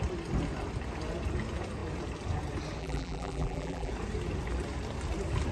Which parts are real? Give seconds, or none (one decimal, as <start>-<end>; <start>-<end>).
0.0-2.8; 3.9-5.5